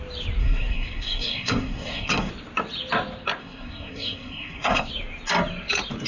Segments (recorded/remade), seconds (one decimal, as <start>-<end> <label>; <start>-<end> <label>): 0.0-0.4 recorded; 0.4-2.3 remade; 2.3-3.4 recorded; 3.4-4.9 remade; 4.9-6.1 recorded